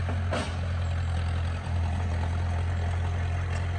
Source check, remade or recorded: recorded